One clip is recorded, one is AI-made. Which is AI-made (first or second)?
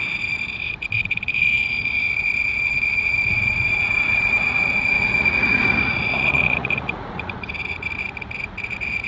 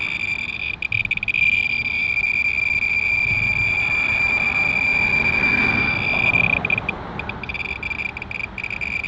first